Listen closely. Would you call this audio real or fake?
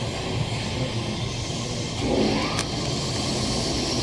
real